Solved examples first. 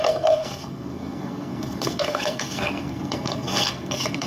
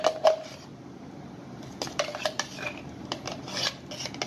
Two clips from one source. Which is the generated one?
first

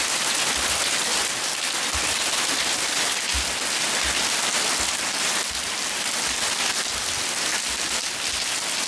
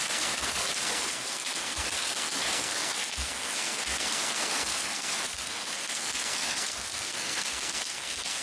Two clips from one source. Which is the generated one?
second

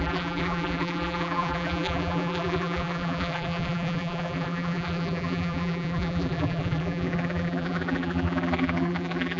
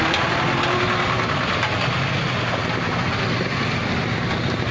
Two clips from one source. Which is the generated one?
first